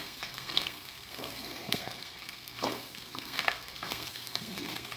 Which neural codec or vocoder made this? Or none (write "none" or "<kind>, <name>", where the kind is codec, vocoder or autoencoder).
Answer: codec, SNAC